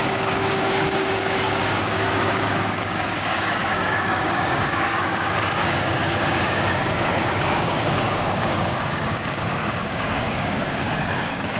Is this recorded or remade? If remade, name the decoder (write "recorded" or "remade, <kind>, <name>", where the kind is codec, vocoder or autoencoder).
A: remade, codec, DAC